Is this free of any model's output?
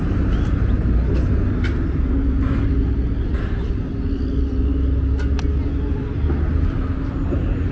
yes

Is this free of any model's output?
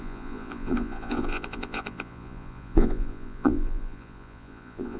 no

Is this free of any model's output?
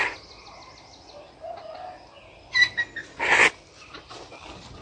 yes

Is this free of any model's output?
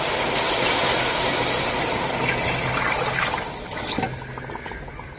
yes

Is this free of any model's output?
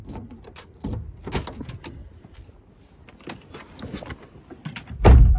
yes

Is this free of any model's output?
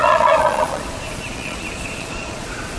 no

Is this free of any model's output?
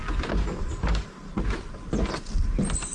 yes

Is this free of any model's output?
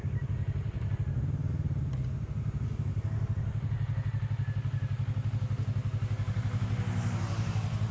yes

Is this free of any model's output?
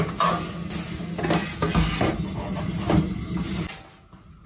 yes